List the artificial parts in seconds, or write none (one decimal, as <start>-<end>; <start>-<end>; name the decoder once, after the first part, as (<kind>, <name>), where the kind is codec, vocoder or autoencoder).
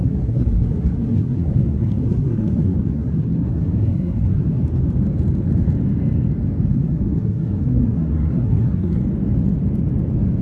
0.0-4.6 (codec, SNAC); 6.7-9.0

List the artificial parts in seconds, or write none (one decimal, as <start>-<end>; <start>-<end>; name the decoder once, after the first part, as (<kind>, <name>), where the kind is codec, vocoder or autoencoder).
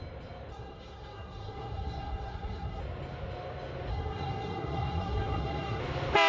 0.5-2.8 (codec, SNAC); 3.9-5.8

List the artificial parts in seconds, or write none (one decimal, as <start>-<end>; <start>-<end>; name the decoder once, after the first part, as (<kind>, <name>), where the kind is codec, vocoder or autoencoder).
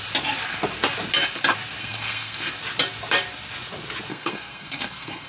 1.8-2.5 (codec, SNAC); 4.1-5.3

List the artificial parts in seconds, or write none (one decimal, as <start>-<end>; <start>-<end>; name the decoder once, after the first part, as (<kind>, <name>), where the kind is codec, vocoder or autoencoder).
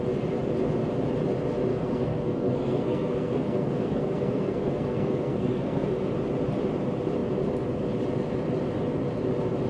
1.7-5.9 (codec, SNAC)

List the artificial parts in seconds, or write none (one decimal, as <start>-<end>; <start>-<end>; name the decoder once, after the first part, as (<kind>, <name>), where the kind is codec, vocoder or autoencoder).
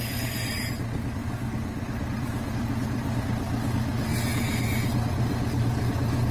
none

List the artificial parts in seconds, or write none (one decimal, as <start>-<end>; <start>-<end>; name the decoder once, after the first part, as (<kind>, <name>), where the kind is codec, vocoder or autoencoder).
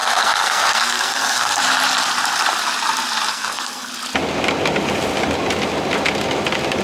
0.0-1.6 (codec, SNAC); 3.3-3.9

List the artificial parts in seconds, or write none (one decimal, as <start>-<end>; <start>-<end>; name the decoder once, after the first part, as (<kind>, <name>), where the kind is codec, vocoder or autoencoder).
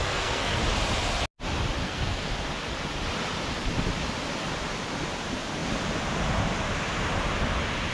0.0-0.6 (codec, SNAC); 1.8-2.3